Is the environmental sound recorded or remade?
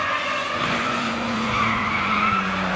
remade